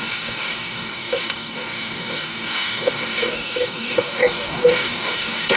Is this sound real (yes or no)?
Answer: no